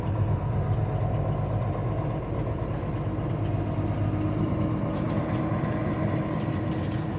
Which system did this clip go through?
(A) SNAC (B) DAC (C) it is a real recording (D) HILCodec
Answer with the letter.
C